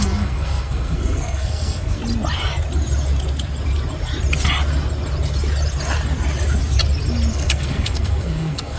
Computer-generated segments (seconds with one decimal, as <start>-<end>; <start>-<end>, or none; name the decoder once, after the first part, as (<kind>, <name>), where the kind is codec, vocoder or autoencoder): 0.0-2.0 (codec, SNAC); 7.3-8.8